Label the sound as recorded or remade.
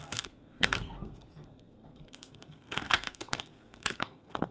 remade